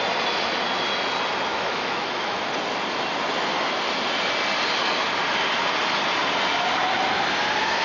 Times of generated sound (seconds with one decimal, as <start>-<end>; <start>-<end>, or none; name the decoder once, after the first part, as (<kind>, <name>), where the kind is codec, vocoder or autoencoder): 1.5-2.5 (autoencoder, DAC-VAE)